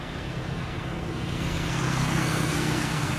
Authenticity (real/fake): fake